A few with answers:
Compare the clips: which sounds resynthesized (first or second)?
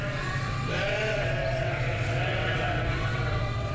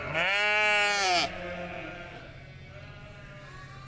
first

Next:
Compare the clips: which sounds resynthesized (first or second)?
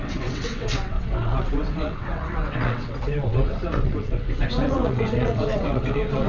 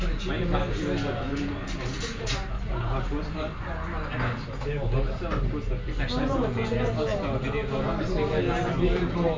first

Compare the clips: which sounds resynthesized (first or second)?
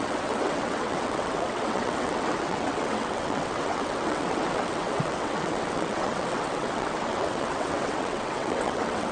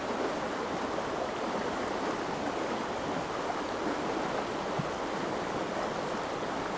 first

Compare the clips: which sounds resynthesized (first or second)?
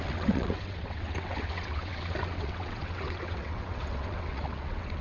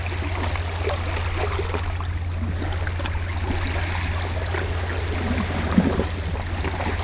first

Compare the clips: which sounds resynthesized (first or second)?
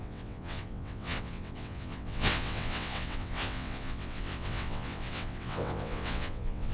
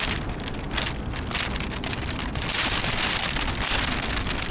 first